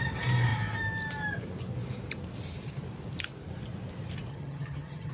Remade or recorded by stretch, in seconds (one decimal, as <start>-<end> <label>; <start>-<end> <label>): 0.0-4.3 recorded; 4.3-5.1 remade